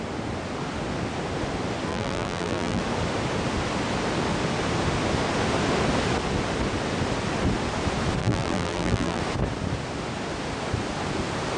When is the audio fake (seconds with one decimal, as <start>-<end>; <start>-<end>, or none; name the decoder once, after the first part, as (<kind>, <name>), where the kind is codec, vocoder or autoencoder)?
1.9-2.8 (vocoder, BigVGAN v2); 8.2-9.2